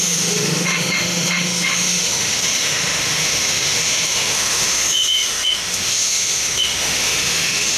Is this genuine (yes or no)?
no